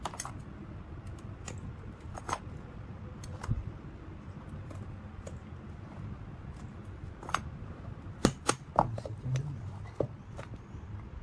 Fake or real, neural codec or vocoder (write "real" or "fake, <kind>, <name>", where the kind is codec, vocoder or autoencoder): real